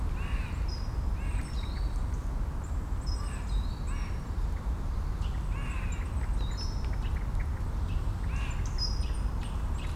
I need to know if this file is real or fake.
real